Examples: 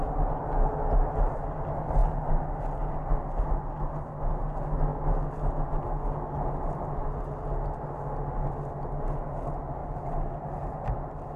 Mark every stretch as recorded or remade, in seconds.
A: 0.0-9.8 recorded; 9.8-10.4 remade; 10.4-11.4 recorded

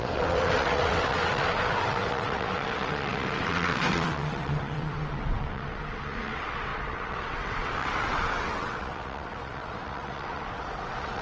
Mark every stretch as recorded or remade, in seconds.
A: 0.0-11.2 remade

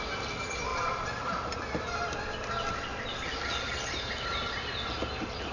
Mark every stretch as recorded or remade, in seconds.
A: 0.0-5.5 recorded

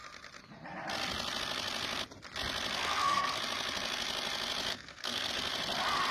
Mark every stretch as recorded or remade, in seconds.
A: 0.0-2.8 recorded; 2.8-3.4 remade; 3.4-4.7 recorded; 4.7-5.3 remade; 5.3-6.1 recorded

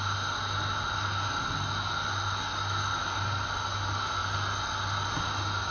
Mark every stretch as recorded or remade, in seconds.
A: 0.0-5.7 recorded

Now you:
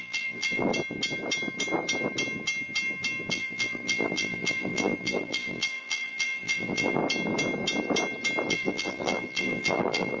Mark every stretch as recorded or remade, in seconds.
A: 0.0-0.7 remade; 0.7-3.3 recorded; 3.3-7.0 remade; 7.0-8.5 recorded; 8.5-10.2 remade